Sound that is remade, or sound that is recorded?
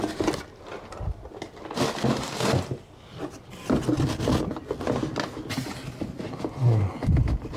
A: recorded